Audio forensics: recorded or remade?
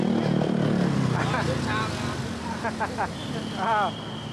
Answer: recorded